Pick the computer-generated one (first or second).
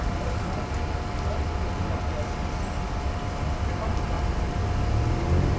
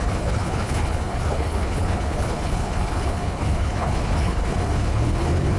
second